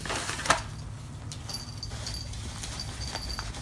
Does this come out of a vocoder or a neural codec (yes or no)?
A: no